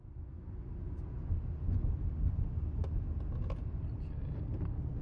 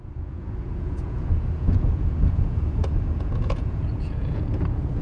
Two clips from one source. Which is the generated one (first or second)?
second